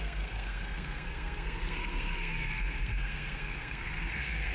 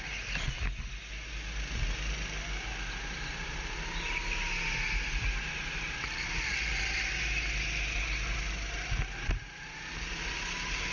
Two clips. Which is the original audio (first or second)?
second